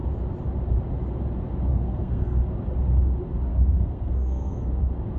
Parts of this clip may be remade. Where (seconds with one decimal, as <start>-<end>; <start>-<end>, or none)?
1.7-2.4; 3.5-4.8